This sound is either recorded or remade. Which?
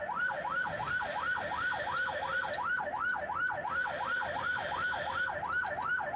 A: recorded